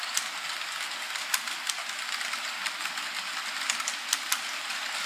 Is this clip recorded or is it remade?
recorded